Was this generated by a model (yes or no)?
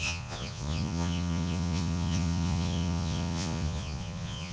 yes